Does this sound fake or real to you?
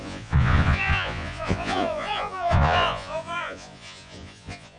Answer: fake